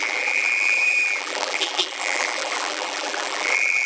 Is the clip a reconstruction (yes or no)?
yes